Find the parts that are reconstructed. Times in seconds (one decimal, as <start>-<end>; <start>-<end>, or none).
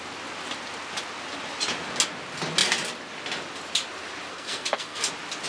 4.3-5.1